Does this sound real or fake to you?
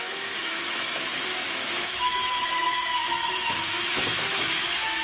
fake